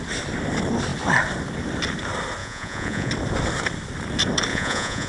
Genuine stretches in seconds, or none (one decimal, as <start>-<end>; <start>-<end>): 0.0-2.4; 3.1-4.5